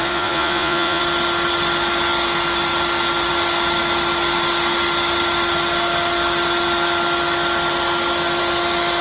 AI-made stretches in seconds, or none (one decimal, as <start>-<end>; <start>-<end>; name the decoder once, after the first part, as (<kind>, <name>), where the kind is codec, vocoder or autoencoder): 0.0-1.0 (vocoder, Vocos)